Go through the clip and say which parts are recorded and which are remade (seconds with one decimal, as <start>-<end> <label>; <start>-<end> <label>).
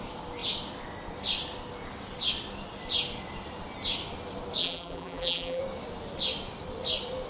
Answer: 0.0-4.6 recorded; 4.6-5.6 remade; 5.6-7.3 recorded